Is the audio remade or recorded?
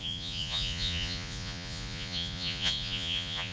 remade